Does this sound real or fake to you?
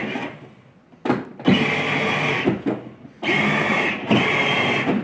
real